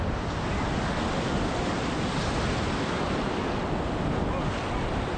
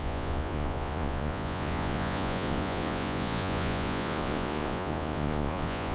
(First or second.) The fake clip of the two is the second